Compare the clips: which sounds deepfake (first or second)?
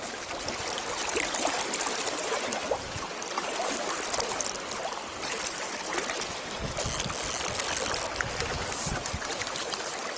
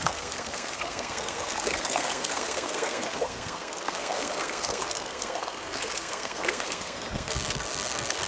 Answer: second